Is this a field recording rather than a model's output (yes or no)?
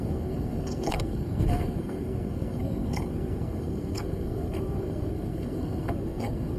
no